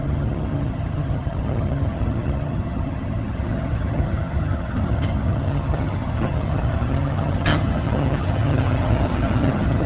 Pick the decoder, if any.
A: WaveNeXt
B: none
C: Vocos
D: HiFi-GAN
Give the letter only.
D